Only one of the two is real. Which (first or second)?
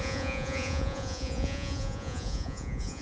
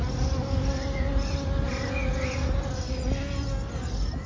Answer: second